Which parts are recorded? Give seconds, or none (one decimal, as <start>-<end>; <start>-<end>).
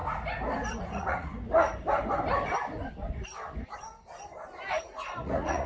0.0-0.8; 1.3-4.7